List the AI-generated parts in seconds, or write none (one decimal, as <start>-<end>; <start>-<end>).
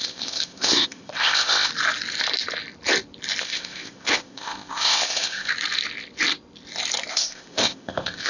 0.0-1.7; 3.4-5.5; 7.1-8.3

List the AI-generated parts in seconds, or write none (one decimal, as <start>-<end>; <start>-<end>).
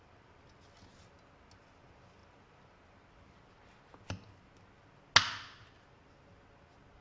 none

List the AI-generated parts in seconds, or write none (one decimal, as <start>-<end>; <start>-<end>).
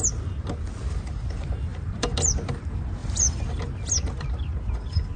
1.7-2.5; 3.0-3.6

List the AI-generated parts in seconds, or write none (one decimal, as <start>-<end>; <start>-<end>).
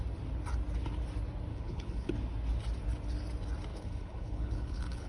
1.5-2.1; 3.7-5.1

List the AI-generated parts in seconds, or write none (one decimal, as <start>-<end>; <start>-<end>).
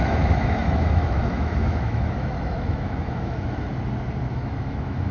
0.0-3.7; 4.3-5.1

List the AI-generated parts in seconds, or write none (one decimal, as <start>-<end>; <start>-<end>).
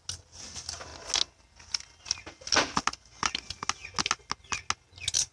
none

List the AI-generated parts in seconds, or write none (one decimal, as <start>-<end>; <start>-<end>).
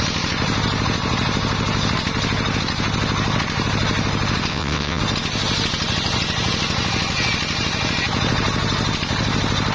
4.5-5.0